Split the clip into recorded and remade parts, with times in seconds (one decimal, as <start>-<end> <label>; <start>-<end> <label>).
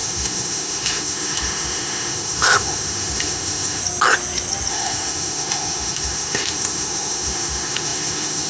0.0-3.8 remade; 3.8-4.7 recorded; 4.7-8.5 remade